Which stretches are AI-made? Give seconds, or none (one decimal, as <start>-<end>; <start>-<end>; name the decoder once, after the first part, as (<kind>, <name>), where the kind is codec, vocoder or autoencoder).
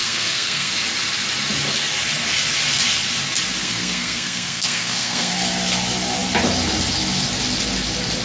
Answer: 0.0-0.7 (codec, SNAC); 3.6-5.3